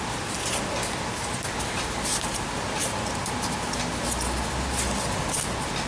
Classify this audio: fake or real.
real